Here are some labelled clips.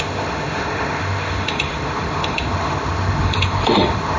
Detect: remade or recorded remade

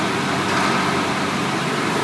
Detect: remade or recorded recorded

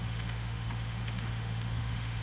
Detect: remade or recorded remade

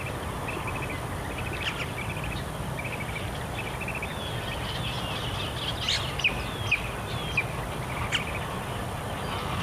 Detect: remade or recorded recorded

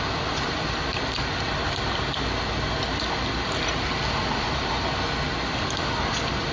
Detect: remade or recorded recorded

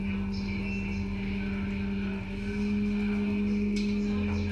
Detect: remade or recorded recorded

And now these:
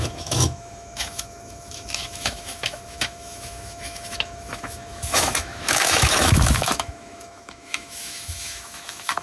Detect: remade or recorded remade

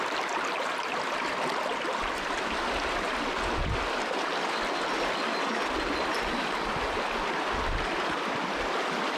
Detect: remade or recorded recorded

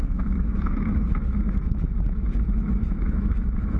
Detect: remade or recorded remade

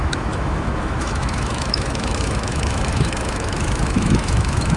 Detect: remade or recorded remade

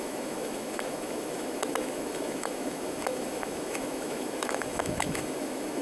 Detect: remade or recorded remade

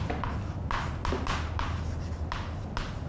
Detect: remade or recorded recorded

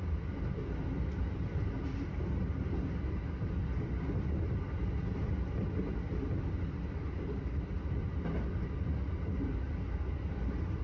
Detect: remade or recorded recorded